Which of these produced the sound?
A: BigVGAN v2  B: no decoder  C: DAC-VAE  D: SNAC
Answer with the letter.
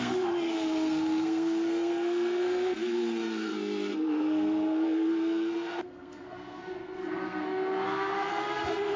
D